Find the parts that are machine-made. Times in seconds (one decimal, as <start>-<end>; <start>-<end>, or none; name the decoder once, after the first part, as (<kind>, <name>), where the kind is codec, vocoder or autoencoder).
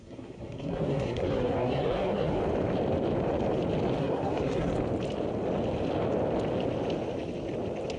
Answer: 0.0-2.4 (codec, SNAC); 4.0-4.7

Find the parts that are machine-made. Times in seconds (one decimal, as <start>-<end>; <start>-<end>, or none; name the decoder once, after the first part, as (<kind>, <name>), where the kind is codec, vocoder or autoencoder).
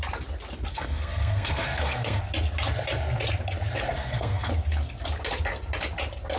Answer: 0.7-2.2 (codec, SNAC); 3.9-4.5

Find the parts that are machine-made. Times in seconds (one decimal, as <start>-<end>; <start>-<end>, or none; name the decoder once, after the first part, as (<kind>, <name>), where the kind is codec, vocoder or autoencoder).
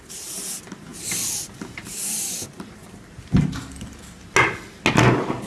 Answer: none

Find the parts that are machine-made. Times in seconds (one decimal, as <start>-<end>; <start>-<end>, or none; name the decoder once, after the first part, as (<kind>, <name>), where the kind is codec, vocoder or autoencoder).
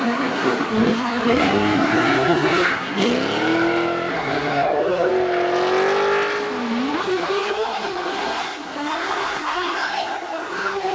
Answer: 0.0-3.1 (codec, SNAC); 4.1-5.1; 7.0-10.9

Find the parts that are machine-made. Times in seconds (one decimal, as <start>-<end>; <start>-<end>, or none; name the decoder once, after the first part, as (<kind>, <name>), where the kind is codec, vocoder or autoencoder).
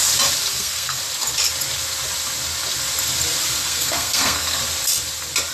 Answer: 0.5-1.0 (codec, SNAC); 3.6-4.6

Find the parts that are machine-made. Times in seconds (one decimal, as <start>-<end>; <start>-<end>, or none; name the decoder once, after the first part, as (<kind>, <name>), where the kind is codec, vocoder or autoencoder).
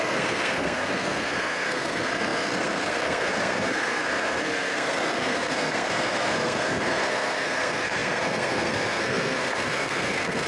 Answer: 0.0-10.5 (codec, SNAC)